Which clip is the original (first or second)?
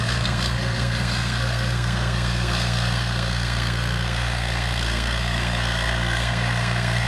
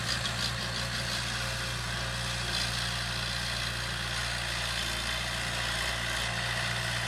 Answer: second